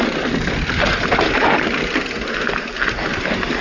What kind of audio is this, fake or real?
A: real